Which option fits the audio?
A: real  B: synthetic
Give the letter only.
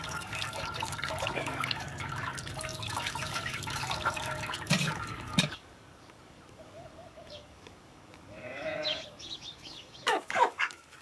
B